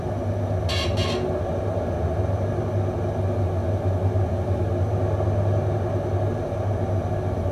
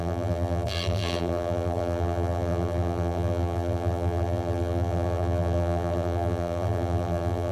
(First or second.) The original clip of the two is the first